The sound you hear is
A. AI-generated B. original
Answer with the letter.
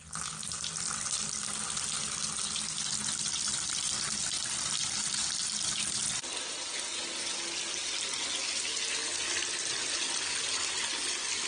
B